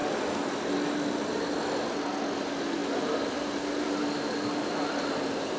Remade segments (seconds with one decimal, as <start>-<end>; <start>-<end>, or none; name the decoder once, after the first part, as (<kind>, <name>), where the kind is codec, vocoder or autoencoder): none